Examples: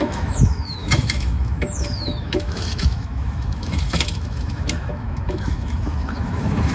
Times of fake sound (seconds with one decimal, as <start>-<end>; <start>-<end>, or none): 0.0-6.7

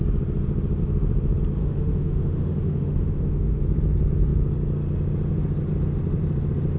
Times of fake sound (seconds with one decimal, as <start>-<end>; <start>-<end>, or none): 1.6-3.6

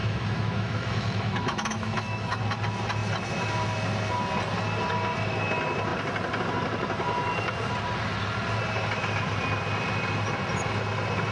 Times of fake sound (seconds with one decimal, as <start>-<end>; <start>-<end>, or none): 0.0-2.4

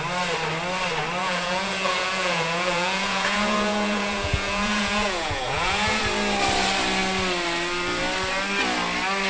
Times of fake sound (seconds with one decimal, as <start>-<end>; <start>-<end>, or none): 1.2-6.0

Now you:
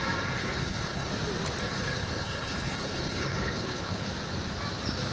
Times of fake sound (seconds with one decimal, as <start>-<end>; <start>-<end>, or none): 0.4-1.1; 1.6-4.1

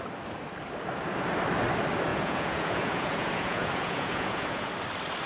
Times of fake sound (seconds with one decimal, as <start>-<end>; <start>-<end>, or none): 2.1-4.7

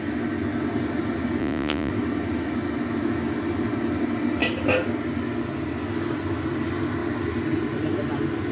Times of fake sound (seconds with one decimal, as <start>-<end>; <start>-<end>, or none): 1.4-1.9

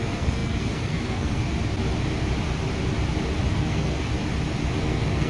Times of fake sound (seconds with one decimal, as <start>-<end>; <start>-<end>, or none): 0.0-1.4; 3.6-4.1; 4.8-5.3